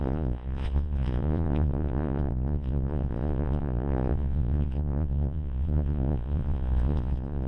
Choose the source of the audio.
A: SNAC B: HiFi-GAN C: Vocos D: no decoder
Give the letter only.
C